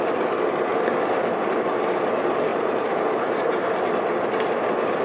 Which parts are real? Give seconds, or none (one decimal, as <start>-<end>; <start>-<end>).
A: 0.0-2.5; 3.8-5.0